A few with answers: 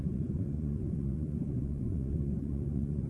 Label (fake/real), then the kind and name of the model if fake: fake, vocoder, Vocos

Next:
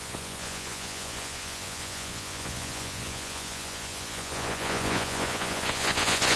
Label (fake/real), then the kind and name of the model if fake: fake, vocoder, Vocos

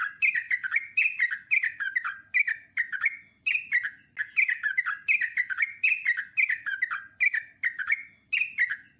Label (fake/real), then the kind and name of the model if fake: real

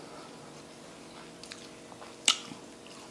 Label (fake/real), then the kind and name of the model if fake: real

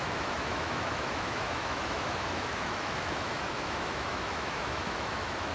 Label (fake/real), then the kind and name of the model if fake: fake, autoencoder, DAC-VAE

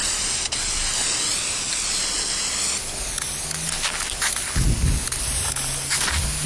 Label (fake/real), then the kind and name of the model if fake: real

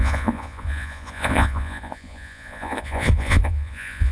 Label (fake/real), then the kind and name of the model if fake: fake, vocoder, Vocos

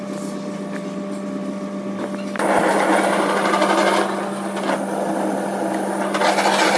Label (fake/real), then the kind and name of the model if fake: real